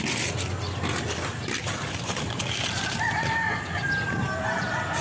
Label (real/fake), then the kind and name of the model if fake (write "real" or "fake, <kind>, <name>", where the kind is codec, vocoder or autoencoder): real